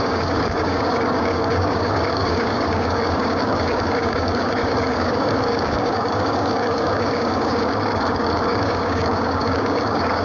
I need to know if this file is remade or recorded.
remade